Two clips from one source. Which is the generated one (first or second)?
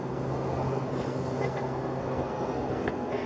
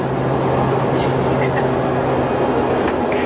first